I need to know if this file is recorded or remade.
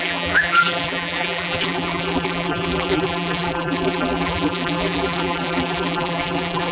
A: remade